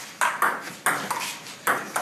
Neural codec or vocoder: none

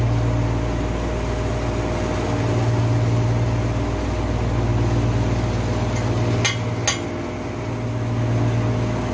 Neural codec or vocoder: none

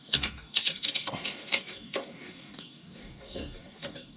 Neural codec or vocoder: codec, DAC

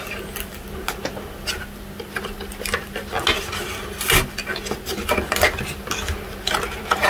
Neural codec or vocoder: none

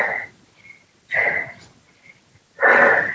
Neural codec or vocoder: none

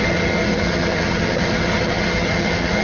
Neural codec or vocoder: vocoder, HiFi-GAN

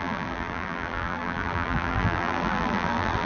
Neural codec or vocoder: vocoder, BigVGAN v2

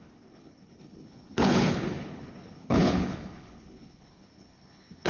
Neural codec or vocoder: codec, HILCodec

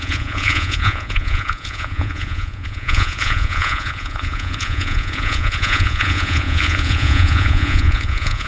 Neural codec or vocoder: vocoder, Vocos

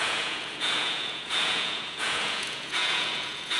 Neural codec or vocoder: vocoder, Vocos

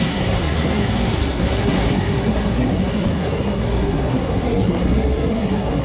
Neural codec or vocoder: codec, SNAC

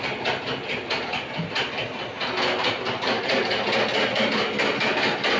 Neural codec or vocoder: none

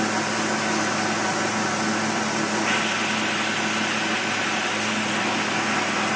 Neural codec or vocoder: none